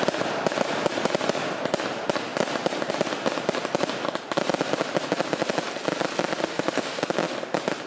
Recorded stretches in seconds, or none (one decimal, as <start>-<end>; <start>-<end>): 0.0-6.4; 7.0-7.9